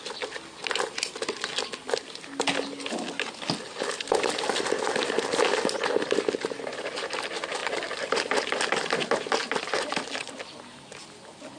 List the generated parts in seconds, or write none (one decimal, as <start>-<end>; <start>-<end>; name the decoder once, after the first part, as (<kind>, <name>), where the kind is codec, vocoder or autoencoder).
none